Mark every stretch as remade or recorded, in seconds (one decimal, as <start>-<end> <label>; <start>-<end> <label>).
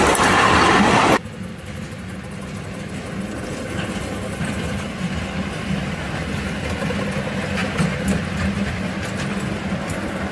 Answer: 0.0-10.3 recorded